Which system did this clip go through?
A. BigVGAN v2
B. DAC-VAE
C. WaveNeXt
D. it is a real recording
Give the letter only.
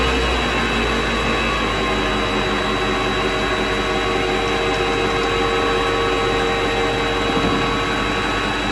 D